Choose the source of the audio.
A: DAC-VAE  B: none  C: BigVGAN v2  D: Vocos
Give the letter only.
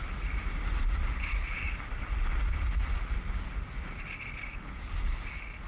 B